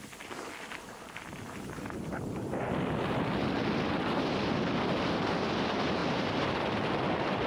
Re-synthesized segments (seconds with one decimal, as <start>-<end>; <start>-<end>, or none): none